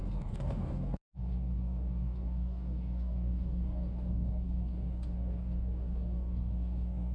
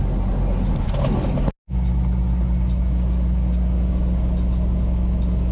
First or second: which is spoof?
first